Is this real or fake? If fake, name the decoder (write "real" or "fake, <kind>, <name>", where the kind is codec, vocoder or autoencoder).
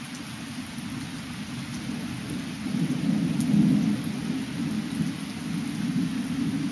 real